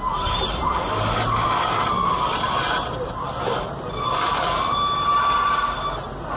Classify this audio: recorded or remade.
recorded